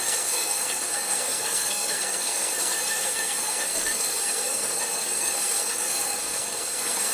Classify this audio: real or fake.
fake